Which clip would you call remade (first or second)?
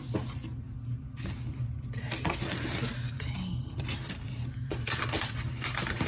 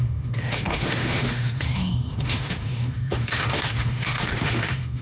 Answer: second